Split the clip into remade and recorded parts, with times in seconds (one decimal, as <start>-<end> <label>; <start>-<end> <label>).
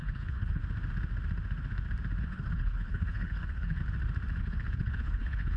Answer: 0.0-0.6 remade; 0.6-2.2 recorded; 2.2-3.8 remade; 3.8-4.4 recorded; 4.4-5.6 remade